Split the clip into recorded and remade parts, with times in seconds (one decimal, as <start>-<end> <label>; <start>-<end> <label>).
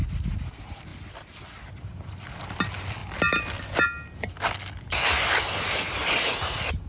0.0-6.9 recorded